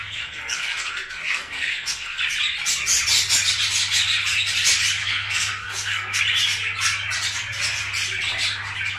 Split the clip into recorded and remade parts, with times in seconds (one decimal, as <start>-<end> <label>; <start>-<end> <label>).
0.0-2.2 remade; 2.2-5.0 recorded; 5.0-6.2 remade; 6.2-9.0 recorded